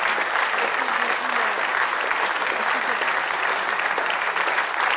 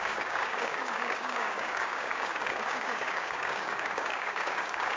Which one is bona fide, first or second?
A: first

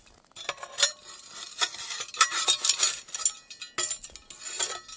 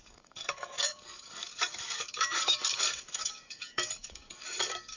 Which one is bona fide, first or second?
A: first